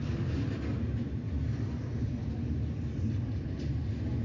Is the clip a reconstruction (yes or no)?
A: no